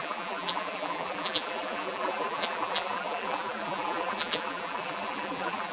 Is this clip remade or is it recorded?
remade